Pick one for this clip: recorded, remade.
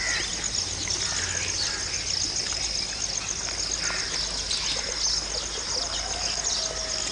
recorded